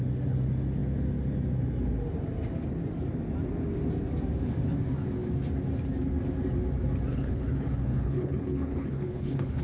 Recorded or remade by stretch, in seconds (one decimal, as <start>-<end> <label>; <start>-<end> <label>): 0.0-7.1 recorded; 7.1-9.6 remade